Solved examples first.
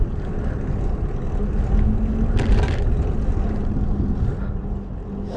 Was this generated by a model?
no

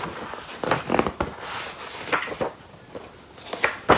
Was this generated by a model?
no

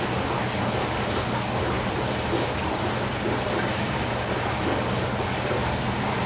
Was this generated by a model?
no